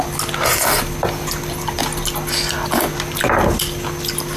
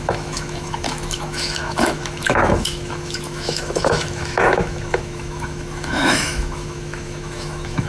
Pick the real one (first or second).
first